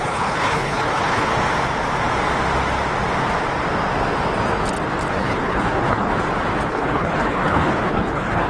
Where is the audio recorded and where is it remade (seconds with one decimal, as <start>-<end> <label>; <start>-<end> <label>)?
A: 0.0-1.3 remade; 1.3-5.1 recorded; 5.1-6.1 remade; 6.1-6.7 recorded; 6.7-8.5 remade